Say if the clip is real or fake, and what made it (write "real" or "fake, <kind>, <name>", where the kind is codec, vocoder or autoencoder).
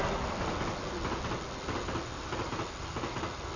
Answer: real